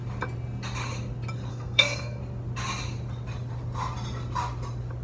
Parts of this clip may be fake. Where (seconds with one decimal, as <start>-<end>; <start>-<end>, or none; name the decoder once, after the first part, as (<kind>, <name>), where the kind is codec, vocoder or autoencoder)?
1.5-2.2 (codec, SNAC)